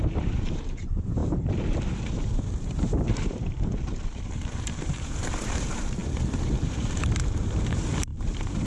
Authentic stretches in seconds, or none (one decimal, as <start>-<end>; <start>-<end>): none